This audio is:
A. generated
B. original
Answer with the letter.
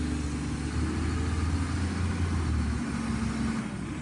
B